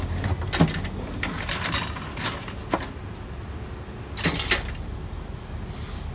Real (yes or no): yes